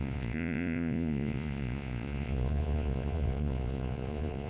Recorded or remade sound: remade